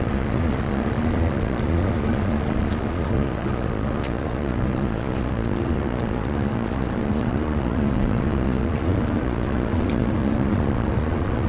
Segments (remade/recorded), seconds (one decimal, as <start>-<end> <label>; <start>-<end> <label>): 0.0-11.5 remade